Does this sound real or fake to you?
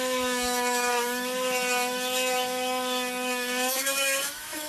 fake